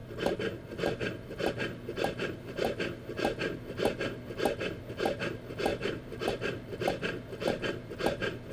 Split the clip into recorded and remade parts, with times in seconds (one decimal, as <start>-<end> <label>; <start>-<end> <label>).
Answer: 0.0-5.7 recorded; 5.7-7.9 remade; 7.9-8.5 recorded